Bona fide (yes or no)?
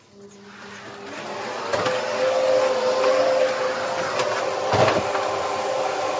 yes